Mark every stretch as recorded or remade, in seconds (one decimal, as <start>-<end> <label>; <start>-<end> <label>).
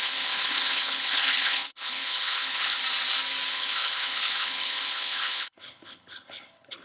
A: 0.0-2.8 remade; 2.8-3.5 recorded; 3.5-6.8 remade